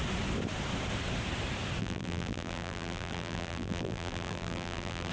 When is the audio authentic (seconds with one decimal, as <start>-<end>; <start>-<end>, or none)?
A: 0.0-1.8